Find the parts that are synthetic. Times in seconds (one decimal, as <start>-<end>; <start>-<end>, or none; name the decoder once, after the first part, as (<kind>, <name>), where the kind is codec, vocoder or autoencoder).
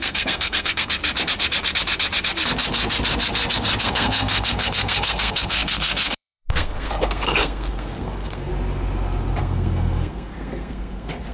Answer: 0.0-1.0 (codec, SNAC); 3.8-8.5; 9.4-11.3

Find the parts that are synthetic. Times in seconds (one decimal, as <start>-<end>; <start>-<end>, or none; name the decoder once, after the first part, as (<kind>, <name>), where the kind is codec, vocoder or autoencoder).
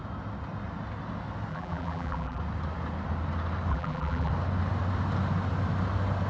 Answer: 1.5-2.4 (vocoder, BigVGAN v2); 3.7-4.3